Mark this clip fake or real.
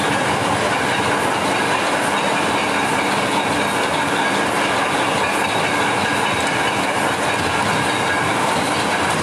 real